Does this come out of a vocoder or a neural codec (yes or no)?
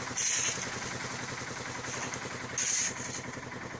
no